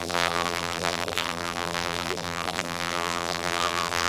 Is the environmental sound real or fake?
fake